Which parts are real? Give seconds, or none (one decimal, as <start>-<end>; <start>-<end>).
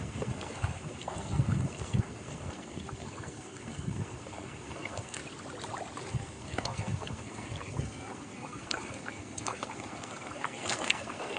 5.2-6.1